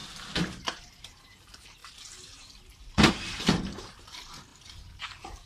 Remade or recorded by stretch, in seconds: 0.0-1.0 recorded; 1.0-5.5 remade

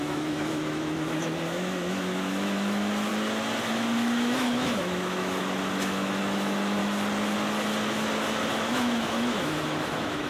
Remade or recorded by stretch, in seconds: 0.0-3.1 remade; 3.1-3.7 recorded; 3.7-6.8 remade; 6.8-8.5 recorded; 8.5-10.3 remade